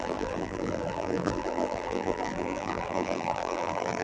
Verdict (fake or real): fake